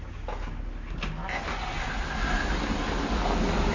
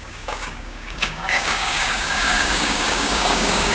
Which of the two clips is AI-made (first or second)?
second